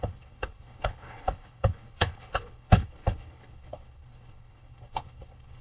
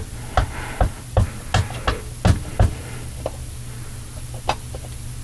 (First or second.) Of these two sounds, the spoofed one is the first